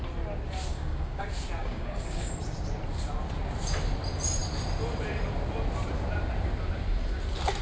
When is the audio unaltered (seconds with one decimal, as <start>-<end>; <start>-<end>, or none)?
0.0-0.7; 1.2-1.6; 2.3-7.6

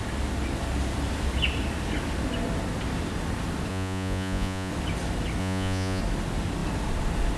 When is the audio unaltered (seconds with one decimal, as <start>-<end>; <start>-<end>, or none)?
0.0-3.7; 4.7-5.4; 6.0-7.4

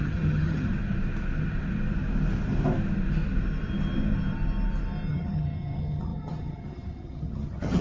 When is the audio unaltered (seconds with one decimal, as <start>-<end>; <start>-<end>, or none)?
0.7-5.1

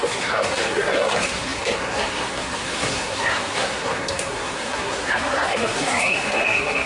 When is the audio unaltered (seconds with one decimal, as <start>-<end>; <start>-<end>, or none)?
none

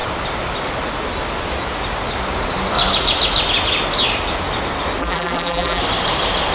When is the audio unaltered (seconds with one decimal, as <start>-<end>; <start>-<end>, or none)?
0.0-5.0; 5.8-6.5

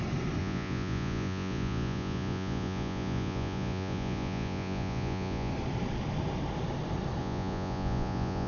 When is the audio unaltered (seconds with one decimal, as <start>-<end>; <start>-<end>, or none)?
0.0-0.4; 5.5-7.2